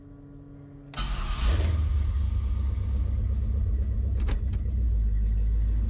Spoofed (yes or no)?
no